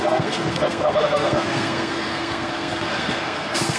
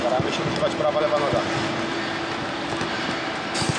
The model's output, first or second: first